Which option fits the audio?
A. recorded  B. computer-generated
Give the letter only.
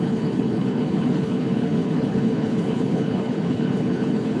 B